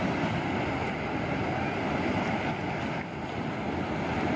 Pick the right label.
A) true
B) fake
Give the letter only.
A